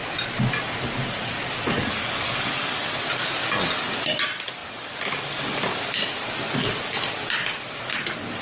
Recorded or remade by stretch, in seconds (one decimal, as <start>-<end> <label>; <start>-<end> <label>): 0.0-8.4 recorded